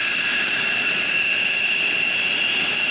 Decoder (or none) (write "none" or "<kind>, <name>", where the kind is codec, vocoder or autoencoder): none